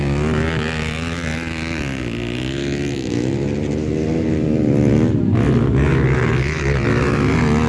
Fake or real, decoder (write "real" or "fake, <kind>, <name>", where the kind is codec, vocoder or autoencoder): real